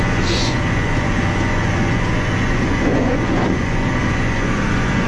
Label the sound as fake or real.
fake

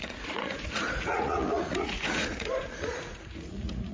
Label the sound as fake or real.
fake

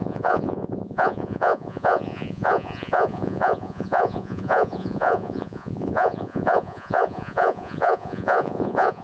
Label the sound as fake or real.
fake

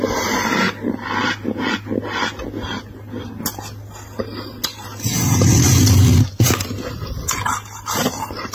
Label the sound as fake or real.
real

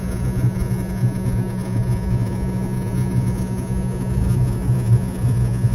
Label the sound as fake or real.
fake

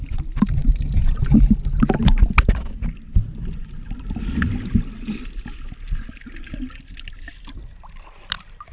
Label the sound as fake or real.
real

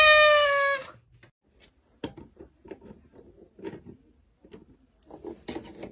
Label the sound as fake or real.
real